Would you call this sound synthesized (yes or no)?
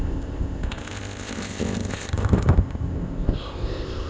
yes